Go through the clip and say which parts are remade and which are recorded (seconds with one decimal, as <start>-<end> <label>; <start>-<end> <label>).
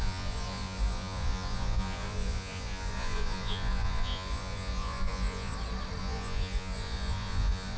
0.0-5.5 remade; 5.5-6.0 recorded; 6.0-7.8 remade